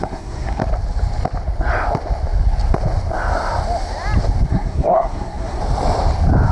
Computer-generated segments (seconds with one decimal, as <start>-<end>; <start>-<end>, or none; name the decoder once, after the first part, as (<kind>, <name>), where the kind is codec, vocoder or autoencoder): 0.0-0.6 (codec, SNAC); 4.5-5.6